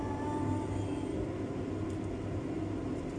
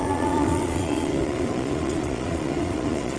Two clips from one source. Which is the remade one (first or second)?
second